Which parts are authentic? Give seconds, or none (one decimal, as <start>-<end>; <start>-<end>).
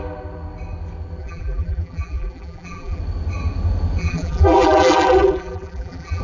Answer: 0.0-1.2; 3.0-4.0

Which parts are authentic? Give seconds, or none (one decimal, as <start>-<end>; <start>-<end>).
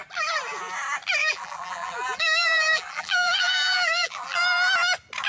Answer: 0.0-1.2; 4.4-5.3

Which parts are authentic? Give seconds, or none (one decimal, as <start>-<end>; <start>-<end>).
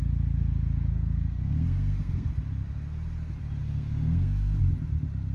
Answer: 0.0-0.9; 2.3-3.6; 4.6-5.3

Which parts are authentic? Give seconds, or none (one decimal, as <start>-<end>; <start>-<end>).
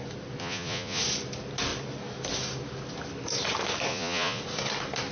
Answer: 0.0-0.4; 1.0-3.9; 4.4-5.1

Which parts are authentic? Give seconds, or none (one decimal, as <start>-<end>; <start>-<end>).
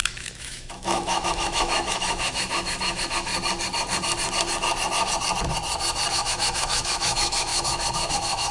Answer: 3.3-6.1